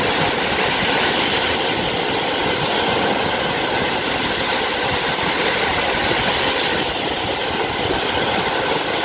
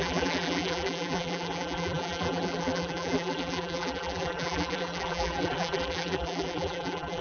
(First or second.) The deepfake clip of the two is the second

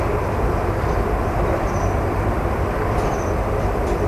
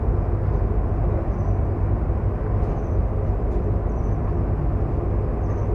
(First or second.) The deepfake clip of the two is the first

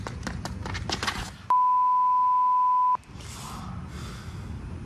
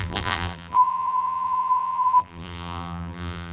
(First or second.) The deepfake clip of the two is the second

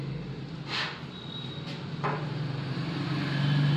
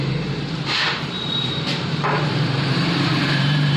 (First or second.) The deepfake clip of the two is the second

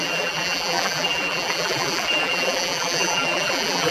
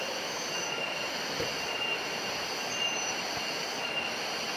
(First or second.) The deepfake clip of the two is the first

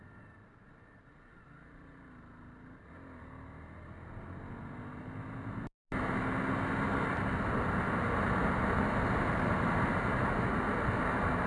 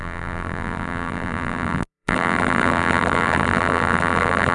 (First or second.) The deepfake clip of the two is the second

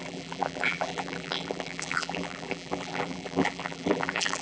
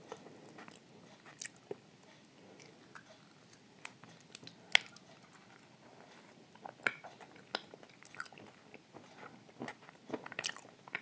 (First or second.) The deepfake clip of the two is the first